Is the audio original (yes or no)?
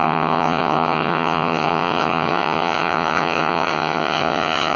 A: no